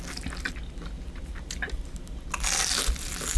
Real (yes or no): yes